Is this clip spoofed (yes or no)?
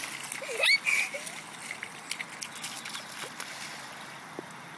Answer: no